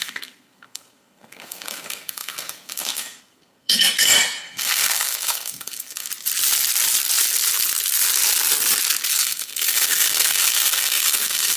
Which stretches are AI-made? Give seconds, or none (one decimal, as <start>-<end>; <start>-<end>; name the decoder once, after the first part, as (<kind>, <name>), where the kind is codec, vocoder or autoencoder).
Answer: 0.0-6.1 (codec, SNAC); 9.1-11.6